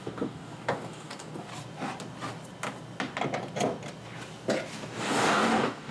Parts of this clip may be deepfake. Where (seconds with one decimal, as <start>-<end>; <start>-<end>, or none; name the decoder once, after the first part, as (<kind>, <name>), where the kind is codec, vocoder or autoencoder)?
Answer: 0.0-1.5 (codec, DAC); 5.0-5.9